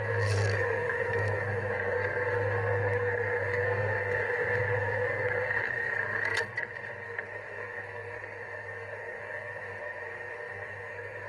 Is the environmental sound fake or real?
fake